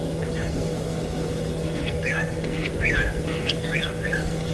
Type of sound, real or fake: fake